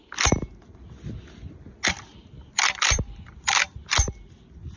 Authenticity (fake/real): real